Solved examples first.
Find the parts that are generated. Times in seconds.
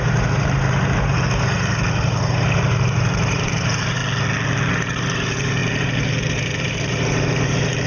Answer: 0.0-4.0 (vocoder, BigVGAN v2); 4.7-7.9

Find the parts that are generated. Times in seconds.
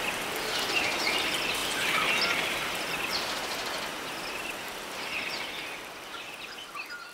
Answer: 3.9-5.2 (vocoder, BigVGAN v2)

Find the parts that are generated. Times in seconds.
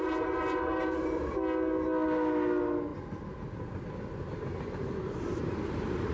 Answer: 2.9-3.9 (vocoder, BigVGAN v2)